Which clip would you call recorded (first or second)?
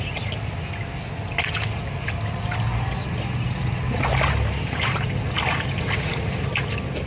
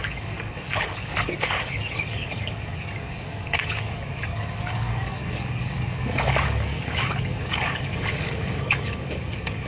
first